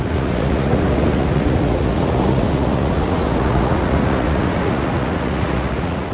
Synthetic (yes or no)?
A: yes